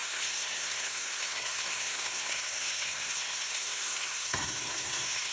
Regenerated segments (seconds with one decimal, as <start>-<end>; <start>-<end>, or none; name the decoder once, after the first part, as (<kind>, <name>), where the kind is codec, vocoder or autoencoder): 0.0-5.3 (codec, SNAC)